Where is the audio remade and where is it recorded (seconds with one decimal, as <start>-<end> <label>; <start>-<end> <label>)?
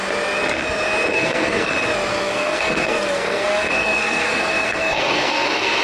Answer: 0.0-1.1 recorded; 1.1-1.7 remade; 1.7-2.1 recorded; 2.1-5.8 remade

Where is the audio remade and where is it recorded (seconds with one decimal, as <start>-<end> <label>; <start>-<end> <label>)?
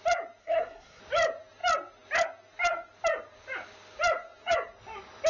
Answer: 0.0-0.4 recorded; 0.4-1.0 remade; 1.0-5.3 recorded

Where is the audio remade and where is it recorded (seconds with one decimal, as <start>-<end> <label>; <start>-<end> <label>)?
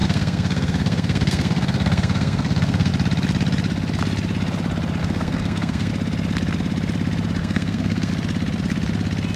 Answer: 0.0-2.9 remade; 2.9-5.0 recorded; 5.0-5.9 remade; 5.9-7.4 recorded; 7.4-8.1 remade; 8.1-9.4 recorded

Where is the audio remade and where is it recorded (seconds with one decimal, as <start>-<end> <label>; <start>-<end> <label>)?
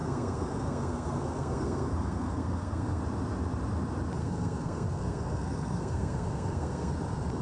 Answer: 0.0-3.0 remade; 3.0-4.2 recorded; 4.2-6.9 remade; 6.9-7.4 recorded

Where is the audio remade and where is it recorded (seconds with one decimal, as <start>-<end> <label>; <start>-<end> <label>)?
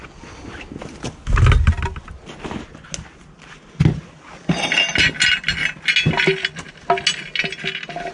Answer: 0.0-8.1 recorded